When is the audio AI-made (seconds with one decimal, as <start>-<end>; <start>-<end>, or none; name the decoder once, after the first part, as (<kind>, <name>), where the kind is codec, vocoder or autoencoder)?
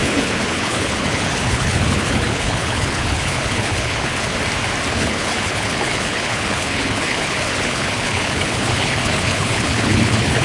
0.0-4.3 (codec, HILCodec); 4.9-10.4